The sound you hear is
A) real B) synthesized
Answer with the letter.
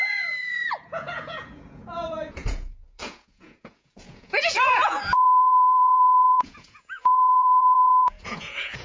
B